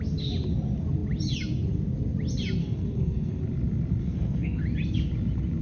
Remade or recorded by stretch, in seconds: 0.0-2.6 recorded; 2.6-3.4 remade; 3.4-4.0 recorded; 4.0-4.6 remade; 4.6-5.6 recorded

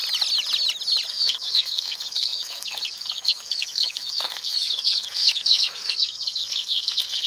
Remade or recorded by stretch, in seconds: 0.0-1.1 recorded; 1.1-7.3 remade